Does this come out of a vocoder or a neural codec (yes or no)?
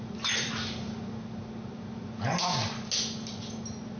no